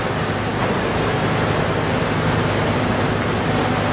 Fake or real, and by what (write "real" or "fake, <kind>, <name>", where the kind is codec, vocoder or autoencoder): real